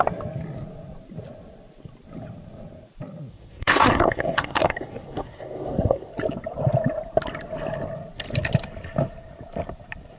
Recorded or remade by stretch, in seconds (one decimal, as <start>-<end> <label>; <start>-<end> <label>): 0.0-3.3 recorded; 3.3-6.1 remade; 6.1-10.2 recorded